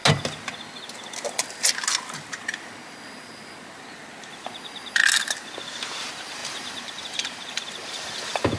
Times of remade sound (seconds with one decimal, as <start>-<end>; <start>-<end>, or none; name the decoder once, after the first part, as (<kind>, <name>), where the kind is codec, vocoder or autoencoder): 4.3-5.0 (vocoder, BigVGAN v2); 6.0-8.6